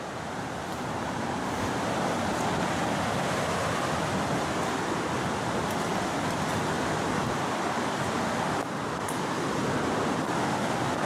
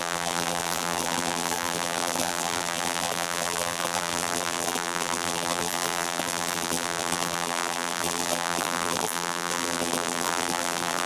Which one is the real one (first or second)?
first